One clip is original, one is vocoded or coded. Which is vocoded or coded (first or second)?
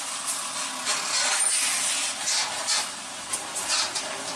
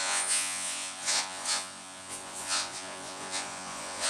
second